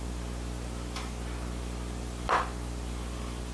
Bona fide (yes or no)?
yes